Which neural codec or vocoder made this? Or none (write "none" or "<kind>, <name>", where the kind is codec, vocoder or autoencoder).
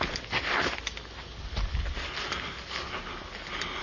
none